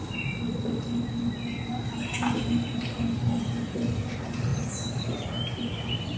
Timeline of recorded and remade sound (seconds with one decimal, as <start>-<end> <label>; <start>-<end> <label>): 0.0-2.1 recorded; 2.1-3.2 remade; 3.2-4.5 recorded; 4.5-5.3 remade; 5.3-6.2 recorded